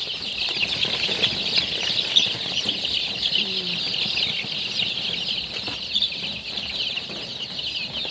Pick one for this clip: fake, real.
real